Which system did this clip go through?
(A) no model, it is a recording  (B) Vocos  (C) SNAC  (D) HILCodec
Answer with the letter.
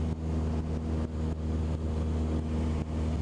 A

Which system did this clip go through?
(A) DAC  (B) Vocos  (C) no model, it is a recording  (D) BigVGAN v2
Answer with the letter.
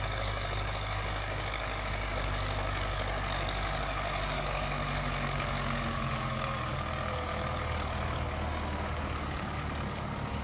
A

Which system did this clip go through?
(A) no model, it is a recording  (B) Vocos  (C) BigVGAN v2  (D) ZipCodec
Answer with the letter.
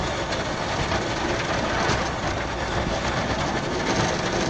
A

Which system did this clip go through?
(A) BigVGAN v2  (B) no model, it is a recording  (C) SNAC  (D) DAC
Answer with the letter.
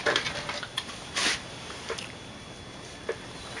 A